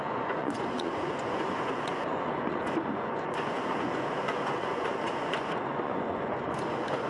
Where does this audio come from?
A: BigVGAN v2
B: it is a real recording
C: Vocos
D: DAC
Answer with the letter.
C